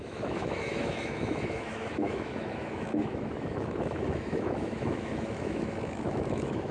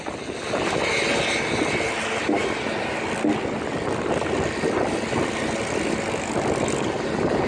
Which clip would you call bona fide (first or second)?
second